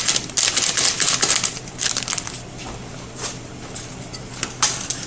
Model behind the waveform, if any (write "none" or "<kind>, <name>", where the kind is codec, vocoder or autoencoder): none